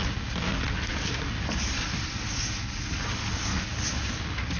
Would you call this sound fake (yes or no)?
no